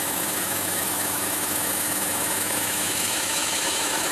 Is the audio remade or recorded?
remade